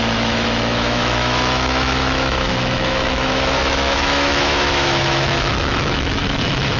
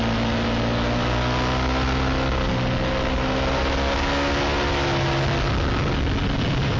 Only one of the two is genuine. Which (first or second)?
second